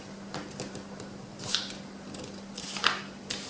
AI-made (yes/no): no